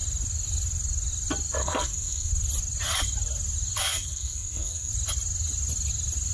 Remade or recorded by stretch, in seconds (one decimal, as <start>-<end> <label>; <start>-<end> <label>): 0.0-1.6 recorded; 1.6-2.3 remade; 2.3-3.9 recorded; 3.9-4.9 remade; 4.9-6.3 recorded